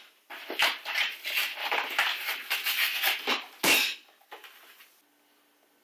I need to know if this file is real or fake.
real